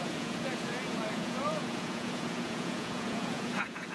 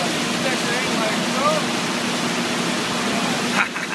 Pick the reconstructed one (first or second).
first